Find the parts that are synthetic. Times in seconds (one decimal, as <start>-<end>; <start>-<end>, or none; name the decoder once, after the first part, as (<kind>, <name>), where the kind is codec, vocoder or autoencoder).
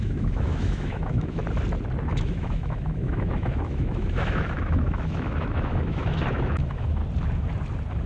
0.0-1.4 (autoencoder, DAC-VAE); 2.1-7.0